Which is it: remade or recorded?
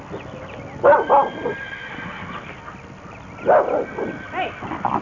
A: recorded